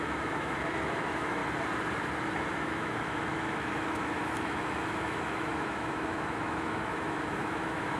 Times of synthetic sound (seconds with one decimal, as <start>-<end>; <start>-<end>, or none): 0.0-1.4; 2.5-8.0